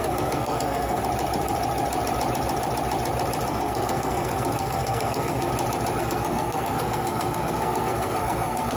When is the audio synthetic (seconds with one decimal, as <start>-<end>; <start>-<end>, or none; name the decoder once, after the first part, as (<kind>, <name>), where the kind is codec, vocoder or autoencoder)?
0.0-1.0 (codec, SNAC); 3.5-5.5; 6.0-8.8